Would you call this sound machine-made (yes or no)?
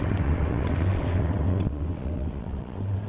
yes